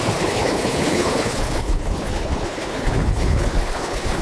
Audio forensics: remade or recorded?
remade